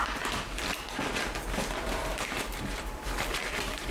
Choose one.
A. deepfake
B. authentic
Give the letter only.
A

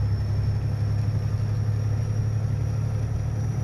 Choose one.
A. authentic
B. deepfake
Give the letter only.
A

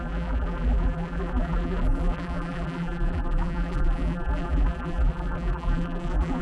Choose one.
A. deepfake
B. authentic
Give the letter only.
A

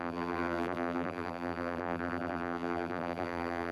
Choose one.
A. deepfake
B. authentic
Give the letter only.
A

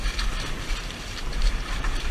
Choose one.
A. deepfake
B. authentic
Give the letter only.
A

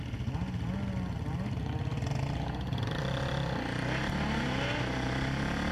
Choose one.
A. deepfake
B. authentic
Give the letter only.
B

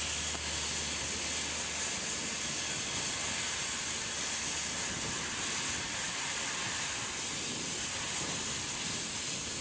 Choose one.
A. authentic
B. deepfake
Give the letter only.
A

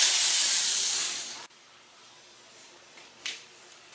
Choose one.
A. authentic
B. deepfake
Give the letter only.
B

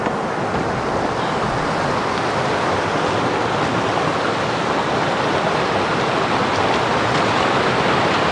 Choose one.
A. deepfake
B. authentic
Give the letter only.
B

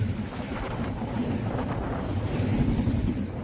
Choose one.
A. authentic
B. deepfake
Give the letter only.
B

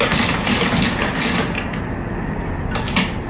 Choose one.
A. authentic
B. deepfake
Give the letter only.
A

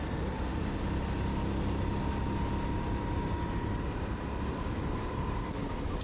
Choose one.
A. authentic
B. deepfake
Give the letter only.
A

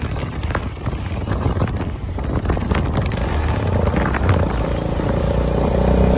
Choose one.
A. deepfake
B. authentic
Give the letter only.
A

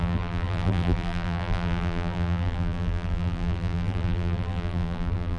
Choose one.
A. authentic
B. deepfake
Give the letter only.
B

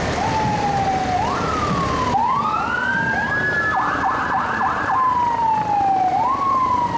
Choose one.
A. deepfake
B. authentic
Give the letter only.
B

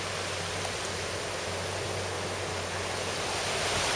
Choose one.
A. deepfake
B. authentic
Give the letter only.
B